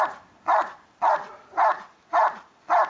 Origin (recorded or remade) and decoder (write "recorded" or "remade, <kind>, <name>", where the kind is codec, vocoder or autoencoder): recorded